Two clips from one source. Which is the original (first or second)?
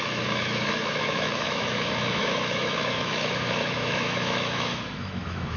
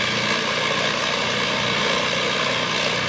second